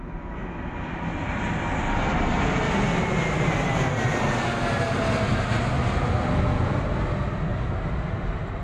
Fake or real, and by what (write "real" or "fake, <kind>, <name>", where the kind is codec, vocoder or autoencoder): real